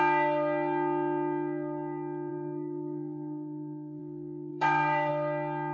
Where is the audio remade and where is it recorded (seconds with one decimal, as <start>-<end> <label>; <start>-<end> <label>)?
0.0-2.3 recorded; 2.3-4.0 remade; 4.0-4.5 recorded; 4.5-5.1 remade; 5.1-5.7 recorded